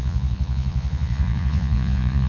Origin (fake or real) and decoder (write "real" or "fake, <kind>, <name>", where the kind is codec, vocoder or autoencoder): fake, vocoder, Vocos